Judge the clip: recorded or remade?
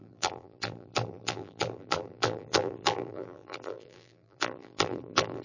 remade